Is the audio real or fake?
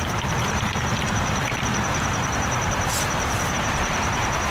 fake